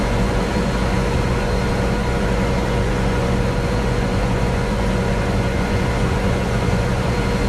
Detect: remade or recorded remade